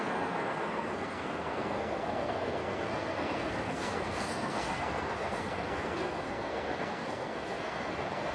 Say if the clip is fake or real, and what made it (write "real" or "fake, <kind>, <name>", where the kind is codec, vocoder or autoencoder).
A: fake, codec, SNAC